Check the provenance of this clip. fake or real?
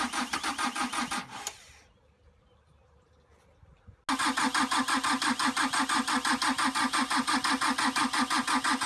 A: real